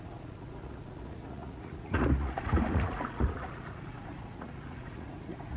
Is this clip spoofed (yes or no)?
yes